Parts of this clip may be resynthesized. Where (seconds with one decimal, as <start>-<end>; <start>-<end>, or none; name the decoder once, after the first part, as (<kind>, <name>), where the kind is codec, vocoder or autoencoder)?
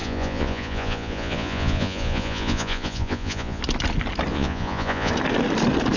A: 0.0-3.6 (vocoder, Vocos); 4.3-5.1